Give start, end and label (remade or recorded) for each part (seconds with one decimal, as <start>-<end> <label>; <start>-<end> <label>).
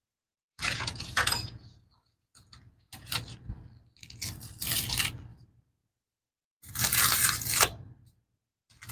0.0-0.5 recorded; 0.5-3.1 remade; 3.1-8.9 recorded